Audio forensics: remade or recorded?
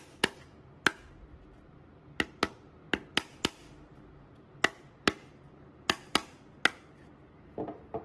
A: recorded